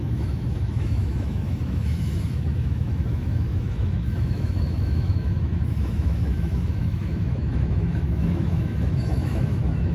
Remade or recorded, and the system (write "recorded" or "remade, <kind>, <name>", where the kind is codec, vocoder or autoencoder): remade, autoencoder, DAC-VAE